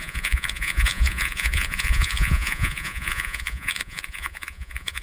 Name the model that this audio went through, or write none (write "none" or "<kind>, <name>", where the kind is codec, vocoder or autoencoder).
vocoder, Vocos